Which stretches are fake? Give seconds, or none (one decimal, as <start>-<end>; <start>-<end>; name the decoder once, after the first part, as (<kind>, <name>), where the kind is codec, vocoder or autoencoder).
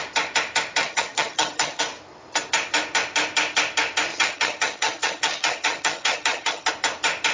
0.8-1.8 (vocoder, HiFi-GAN); 4.1-6.7